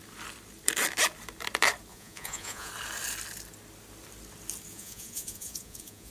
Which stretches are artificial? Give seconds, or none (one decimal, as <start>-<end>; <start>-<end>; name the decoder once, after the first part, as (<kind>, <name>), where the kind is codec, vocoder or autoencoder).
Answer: 1.9-2.7 (vocoder, Vocos); 4.7-6.1